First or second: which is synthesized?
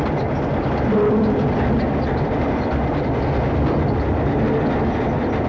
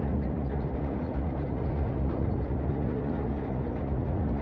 second